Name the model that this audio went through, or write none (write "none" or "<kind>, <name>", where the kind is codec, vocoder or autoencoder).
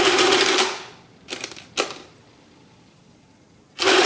none